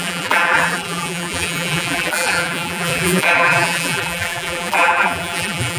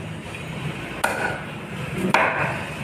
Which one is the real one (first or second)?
second